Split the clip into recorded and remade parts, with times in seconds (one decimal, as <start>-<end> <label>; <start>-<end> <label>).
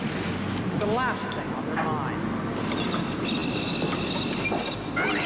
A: 0.0-5.3 recorded